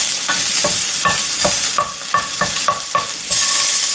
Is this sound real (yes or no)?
yes